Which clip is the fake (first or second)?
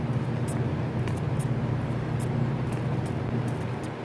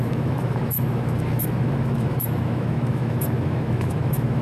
second